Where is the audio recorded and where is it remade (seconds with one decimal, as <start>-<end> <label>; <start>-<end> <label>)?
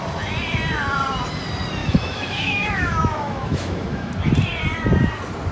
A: 0.0-1.8 recorded; 1.8-4.1 remade; 4.1-5.5 recorded